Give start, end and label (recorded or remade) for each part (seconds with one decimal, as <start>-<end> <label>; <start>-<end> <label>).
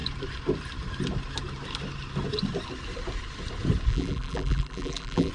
0.0-3.9 recorded; 3.9-5.3 remade